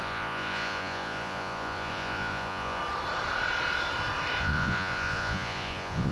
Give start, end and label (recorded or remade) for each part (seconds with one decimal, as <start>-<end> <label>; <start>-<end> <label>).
0.0-2.8 remade; 2.8-4.4 recorded; 4.4-6.1 remade